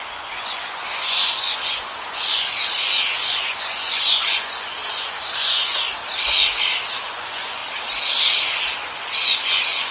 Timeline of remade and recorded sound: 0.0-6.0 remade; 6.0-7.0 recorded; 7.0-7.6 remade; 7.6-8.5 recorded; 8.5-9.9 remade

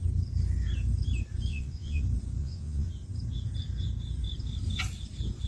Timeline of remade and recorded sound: 0.0-1.5 recorded; 1.5-2.0 remade; 2.0-2.4 recorded; 2.4-2.9 remade; 2.9-5.5 recorded